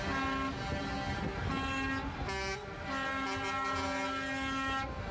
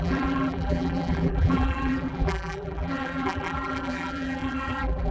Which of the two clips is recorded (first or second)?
first